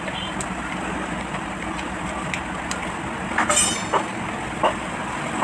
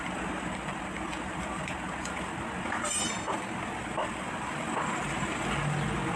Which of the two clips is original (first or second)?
first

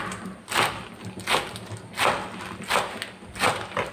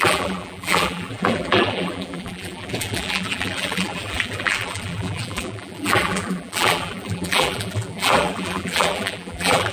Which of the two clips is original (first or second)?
first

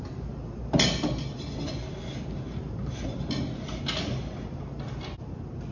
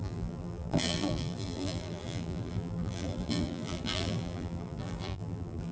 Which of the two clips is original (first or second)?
first